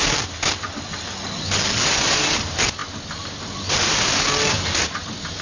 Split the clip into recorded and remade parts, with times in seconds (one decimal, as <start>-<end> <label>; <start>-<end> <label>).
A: 0.0-5.4 recorded